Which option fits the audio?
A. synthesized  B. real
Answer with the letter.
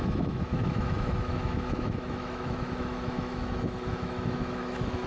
A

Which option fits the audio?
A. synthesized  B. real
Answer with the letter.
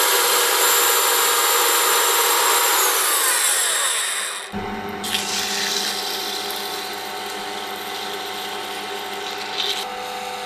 B